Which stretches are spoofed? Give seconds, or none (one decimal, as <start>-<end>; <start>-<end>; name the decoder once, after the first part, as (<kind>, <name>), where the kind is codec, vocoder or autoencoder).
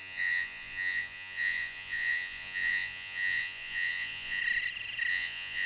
0.0-4.4 (vocoder, Vocos); 5.1-5.7